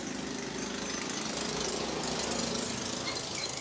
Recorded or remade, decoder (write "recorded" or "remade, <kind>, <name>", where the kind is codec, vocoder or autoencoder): recorded